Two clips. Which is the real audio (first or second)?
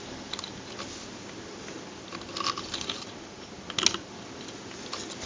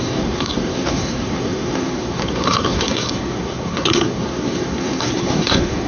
first